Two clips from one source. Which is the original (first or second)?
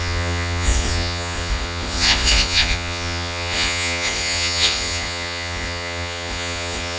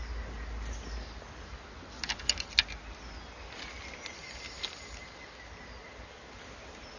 second